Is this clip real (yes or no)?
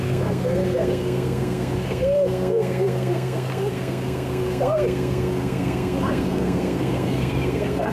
no